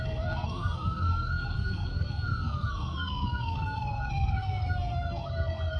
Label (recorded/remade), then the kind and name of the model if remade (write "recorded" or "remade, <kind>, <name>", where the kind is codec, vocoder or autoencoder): remade, codec, SNAC